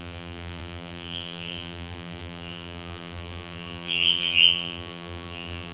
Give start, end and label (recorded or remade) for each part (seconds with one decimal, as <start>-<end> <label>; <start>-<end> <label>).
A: 0.0-5.7 remade